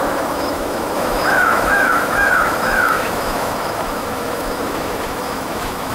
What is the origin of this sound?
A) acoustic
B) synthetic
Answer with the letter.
B